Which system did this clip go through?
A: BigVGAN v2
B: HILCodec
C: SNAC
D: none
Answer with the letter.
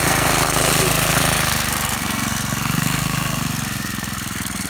C